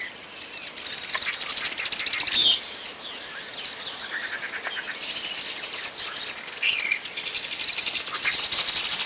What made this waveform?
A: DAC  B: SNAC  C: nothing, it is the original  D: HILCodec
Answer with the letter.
C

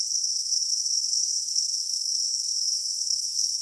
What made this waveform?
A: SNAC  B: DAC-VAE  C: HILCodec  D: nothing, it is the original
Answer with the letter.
A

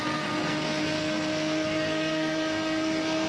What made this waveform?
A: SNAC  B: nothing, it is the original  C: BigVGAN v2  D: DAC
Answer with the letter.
A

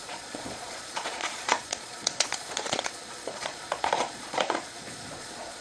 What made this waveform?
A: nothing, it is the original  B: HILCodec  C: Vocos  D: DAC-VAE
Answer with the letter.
C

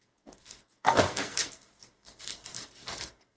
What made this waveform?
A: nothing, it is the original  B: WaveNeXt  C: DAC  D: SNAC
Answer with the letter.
D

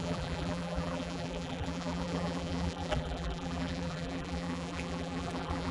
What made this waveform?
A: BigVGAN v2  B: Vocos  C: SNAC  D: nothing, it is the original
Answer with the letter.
A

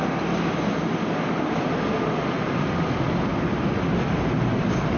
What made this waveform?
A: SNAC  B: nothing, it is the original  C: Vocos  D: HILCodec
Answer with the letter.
B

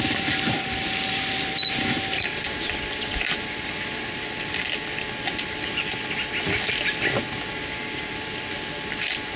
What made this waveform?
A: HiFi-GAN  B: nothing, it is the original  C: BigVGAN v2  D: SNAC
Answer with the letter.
C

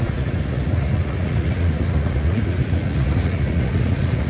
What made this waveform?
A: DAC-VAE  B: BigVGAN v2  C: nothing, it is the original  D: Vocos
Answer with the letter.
D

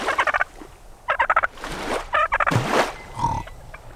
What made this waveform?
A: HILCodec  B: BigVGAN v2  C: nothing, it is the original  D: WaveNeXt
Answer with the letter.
C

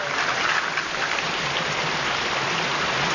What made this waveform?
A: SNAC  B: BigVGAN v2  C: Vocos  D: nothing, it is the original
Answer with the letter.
D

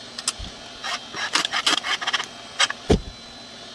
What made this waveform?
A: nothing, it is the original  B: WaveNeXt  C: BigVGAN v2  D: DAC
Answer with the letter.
A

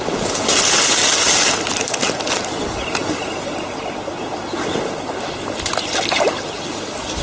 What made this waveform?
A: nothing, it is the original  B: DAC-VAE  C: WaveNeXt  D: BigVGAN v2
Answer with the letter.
A